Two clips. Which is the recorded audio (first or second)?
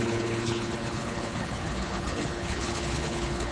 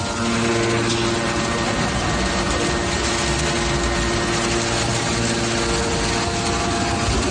second